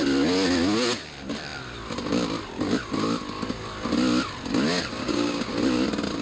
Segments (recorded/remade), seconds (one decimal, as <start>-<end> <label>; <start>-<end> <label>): 0.0-5.0 recorded; 5.0-5.5 remade; 5.5-6.2 recorded